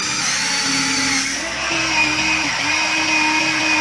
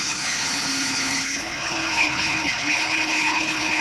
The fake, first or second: second